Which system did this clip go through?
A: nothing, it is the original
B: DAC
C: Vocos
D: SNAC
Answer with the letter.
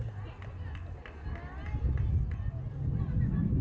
A